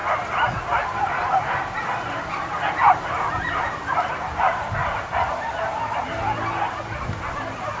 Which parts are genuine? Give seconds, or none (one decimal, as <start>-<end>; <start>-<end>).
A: 0.0-7.8